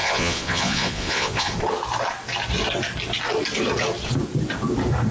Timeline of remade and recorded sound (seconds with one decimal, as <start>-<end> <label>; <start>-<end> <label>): 0.0-1.5 remade; 1.5-5.1 recorded